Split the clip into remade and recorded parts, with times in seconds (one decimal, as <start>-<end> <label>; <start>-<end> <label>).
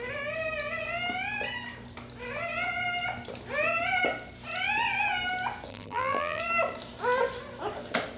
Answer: 0.0-5.7 recorded; 5.7-6.4 remade; 6.4-8.2 recorded